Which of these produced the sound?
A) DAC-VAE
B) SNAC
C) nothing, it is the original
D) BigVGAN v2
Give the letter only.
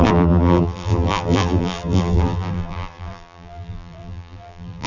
D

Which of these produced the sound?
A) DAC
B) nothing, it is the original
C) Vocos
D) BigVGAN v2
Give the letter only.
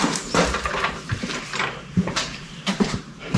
D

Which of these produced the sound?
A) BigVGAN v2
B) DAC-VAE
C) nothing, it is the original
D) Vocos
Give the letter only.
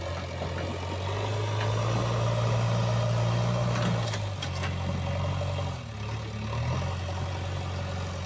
C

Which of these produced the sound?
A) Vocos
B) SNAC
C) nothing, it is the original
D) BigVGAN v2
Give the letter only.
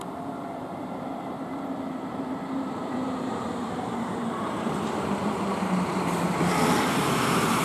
D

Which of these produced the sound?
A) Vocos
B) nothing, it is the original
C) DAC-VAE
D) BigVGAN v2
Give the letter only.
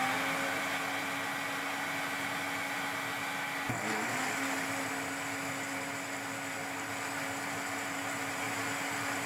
B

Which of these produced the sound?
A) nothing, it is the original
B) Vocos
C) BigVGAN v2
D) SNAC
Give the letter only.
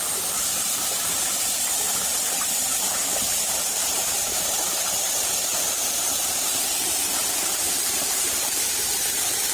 C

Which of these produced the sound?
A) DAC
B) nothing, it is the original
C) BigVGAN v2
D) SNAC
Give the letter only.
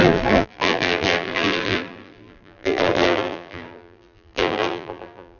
C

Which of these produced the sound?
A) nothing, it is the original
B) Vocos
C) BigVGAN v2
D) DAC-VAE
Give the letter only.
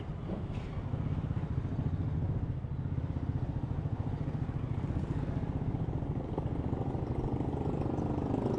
A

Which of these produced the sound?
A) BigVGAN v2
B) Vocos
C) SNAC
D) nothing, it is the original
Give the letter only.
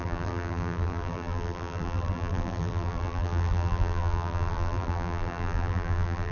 A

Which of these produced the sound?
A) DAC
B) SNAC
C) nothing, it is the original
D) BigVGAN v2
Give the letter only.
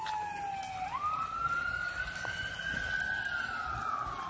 C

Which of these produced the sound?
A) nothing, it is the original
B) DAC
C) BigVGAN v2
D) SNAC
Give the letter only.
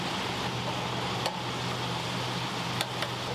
A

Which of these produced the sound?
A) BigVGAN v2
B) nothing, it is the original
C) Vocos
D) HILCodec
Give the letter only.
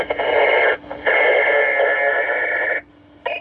B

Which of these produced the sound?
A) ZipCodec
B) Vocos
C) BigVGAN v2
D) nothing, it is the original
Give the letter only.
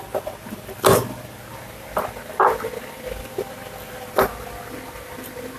D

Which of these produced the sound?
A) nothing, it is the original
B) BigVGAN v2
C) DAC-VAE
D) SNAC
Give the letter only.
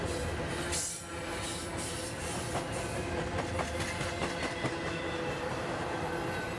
A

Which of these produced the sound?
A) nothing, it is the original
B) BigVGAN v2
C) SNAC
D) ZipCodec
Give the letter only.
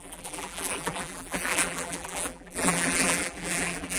B